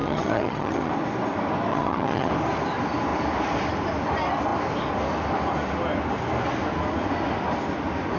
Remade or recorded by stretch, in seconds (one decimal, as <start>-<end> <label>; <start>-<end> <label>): 0.0-0.9 remade; 0.9-1.7 recorded; 1.7-2.3 remade; 2.3-8.2 recorded